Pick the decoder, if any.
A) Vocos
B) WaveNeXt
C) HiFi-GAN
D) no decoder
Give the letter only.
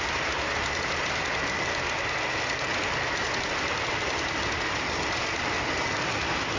D